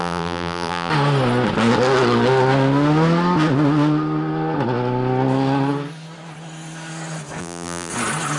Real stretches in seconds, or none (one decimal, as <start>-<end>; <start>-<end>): 0.9-7.4; 7.9-8.4